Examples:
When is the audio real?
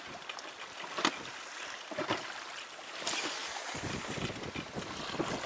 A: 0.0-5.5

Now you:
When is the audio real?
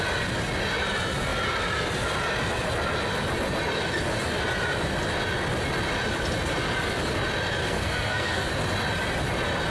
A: 0.0-7.6; 8.5-9.7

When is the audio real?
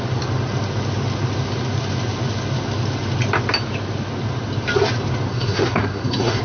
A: 0.0-5.3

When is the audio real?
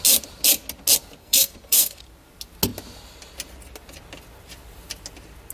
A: 0.0-1.2; 2.0-5.5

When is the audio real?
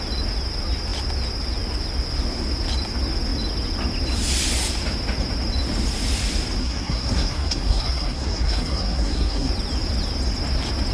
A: 0.0-6.6; 9.5-10.9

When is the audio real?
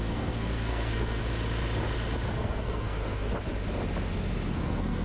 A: 1.2-2.3; 3.3-4.5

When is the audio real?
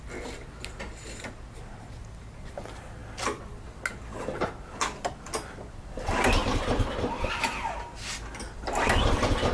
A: 0.0-9.5